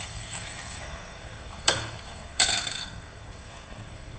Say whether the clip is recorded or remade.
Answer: remade